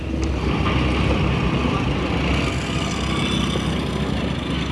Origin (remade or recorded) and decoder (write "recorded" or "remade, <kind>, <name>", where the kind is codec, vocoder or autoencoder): recorded